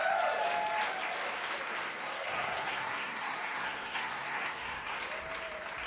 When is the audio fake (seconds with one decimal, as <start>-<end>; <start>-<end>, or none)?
2.0-5.0